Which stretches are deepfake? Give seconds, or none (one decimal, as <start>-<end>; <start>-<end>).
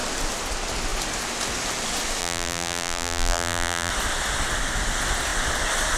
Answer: 2.2-3.9